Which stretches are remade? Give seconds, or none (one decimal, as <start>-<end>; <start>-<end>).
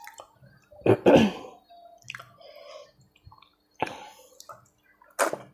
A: none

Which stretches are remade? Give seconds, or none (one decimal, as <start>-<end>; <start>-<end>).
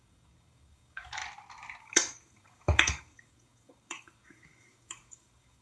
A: 0.0-1.2; 1.8-5.6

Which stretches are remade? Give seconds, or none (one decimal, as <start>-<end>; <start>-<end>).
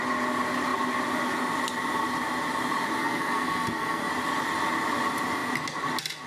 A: 3.0-4.1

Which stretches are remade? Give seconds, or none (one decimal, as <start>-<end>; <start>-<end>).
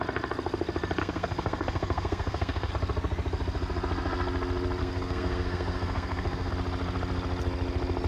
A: 1.0-2.7; 4.8-6.5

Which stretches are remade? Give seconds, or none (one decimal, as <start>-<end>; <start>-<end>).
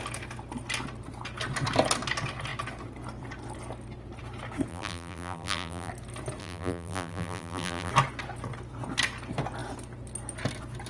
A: 4.7-5.9; 6.4-7.9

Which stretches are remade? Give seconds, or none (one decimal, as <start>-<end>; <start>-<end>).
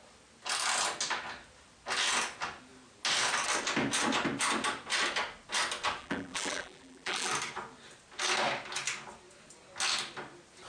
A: 6.0-7.3